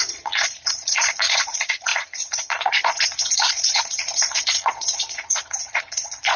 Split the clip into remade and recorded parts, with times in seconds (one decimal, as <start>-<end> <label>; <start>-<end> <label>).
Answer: 0.0-6.4 remade